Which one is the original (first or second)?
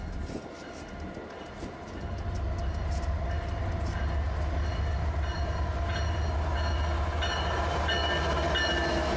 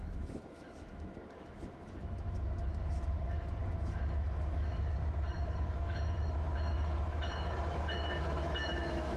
first